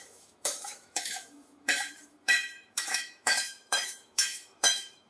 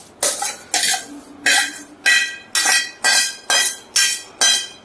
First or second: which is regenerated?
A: first